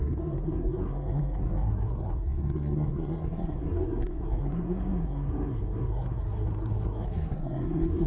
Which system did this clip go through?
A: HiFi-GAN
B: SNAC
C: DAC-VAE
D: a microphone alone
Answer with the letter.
B